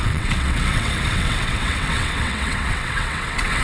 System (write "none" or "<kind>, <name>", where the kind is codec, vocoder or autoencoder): vocoder, WaveNeXt